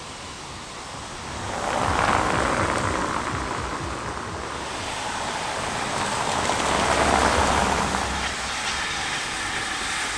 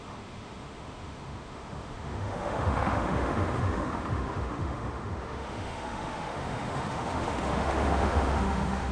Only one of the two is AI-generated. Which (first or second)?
second